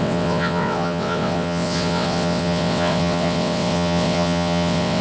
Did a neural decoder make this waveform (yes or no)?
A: yes